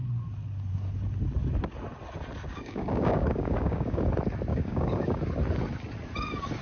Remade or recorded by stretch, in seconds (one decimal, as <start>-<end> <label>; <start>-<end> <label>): 0.0-2.5 recorded; 2.5-4.0 remade; 4.0-4.5 recorded; 4.5-5.2 remade; 5.2-6.6 recorded